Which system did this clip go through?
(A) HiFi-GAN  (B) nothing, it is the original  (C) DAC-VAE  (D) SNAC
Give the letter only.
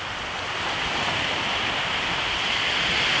B